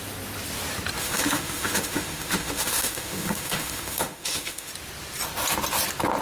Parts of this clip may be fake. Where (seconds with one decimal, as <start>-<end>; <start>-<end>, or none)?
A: 1.0-4.7